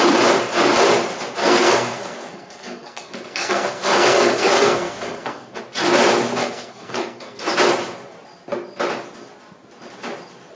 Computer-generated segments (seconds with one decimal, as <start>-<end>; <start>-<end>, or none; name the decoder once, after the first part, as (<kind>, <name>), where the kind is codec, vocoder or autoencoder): 1.4-5.6 (codec, SNAC); 6.4-7.4